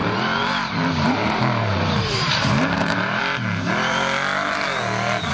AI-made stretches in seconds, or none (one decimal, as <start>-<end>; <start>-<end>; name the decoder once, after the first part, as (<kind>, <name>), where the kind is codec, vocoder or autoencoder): 0.0-3.2 (vocoder, BigVGAN v2)

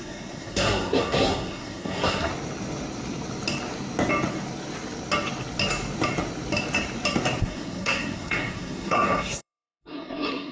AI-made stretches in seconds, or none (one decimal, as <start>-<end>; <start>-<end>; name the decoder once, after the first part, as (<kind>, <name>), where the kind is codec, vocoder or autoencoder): 0.0-2.3 (codec, SNAC); 7.4-10.5